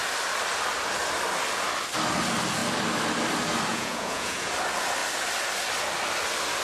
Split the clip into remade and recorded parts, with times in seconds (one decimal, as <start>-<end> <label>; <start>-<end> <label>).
0.0-3.7 recorded; 3.7-4.5 remade; 4.5-6.6 recorded